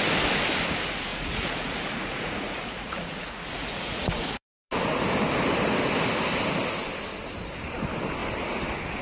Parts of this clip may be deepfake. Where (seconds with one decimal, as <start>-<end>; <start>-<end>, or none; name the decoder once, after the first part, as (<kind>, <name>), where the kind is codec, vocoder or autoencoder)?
1.1-4.7 (vocoder, Vocos)